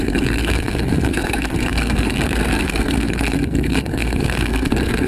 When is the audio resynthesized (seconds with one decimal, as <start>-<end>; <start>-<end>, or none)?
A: 0.0-5.1